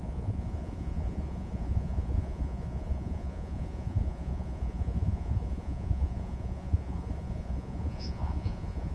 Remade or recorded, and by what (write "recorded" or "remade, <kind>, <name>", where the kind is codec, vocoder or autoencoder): remade, vocoder, Vocos